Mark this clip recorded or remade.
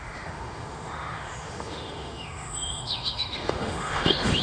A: remade